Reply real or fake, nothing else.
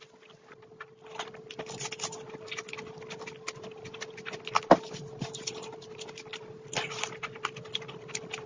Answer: real